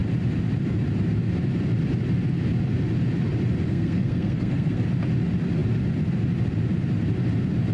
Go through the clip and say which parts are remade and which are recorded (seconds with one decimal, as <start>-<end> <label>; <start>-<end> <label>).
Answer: 0.0-3.7 recorded; 3.7-4.8 remade; 4.8-7.7 recorded

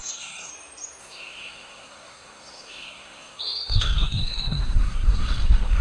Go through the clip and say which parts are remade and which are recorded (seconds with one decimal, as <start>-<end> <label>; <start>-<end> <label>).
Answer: 0.0-0.5 remade; 0.5-1.0 recorded; 1.0-5.8 remade

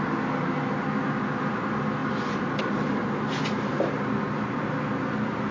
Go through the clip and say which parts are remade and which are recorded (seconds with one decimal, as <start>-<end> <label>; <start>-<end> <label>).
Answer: 0.0-5.5 recorded